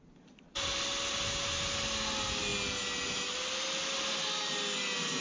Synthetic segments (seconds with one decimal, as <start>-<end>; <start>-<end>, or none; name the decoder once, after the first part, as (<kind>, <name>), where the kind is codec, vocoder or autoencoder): none